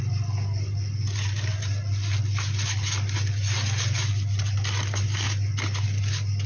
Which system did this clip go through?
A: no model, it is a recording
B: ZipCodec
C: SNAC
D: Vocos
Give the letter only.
A